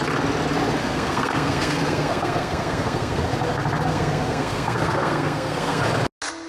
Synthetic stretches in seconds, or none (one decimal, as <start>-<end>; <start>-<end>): 0.8-3.2; 3.9-5.8